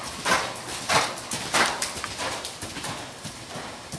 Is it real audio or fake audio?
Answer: real